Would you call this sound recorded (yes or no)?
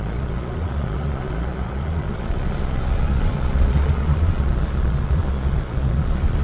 no